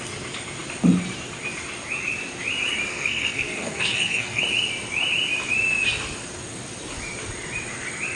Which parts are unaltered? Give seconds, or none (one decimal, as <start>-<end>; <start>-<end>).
0.0-2.9; 4.4-8.2